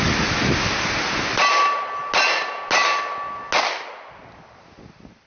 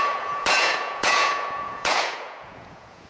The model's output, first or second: second